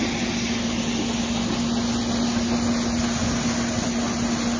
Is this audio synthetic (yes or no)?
no